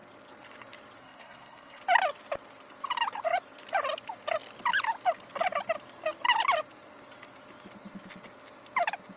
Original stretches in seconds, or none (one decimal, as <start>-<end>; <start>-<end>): 0.0-1.0; 1.8-9.2